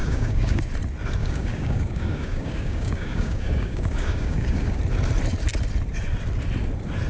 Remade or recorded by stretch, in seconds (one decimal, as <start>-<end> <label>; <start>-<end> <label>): 0.0-0.6 remade; 0.6-1.2 recorded; 1.2-4.8 remade; 4.8-7.1 recorded